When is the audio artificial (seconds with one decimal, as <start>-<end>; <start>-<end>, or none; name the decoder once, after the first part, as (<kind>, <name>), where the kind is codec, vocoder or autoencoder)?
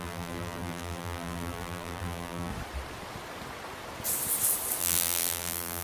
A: 0.0-2.5 (vocoder, BigVGAN v2); 4.8-5.8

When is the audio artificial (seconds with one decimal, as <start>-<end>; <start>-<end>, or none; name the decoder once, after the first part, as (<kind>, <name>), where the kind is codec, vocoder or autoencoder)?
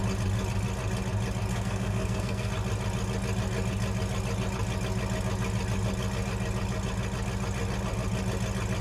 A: 1.5-2.5 (codec, SNAC)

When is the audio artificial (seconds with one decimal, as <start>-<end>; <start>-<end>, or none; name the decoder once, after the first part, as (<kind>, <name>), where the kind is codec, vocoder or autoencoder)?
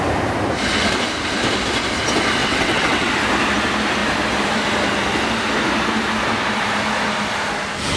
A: 2.4-3.1 (vocoder, WaveNeXt)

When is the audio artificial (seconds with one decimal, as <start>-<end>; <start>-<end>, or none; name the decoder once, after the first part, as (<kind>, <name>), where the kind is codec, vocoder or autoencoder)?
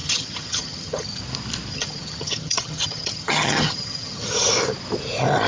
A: 0.0-1.2 (vocoder, HiFi-GAN); 1.7-4.5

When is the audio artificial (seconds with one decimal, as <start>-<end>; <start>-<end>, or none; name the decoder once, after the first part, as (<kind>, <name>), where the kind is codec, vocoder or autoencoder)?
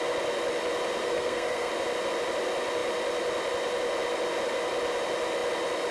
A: 1.0-1.7 (codec, SNAC)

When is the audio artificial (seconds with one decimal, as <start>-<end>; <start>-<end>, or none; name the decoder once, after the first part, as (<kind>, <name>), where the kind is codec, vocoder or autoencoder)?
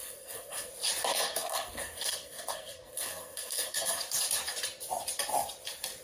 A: 0.0-0.7 (codec, SNAC); 1.1-4.0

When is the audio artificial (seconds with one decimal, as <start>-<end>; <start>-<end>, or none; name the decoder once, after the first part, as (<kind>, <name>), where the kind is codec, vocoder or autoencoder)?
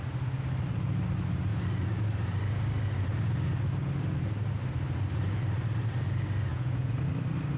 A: 6.5-7.0 (vocoder, Vocos)